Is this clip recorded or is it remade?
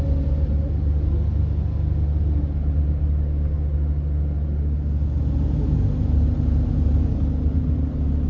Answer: recorded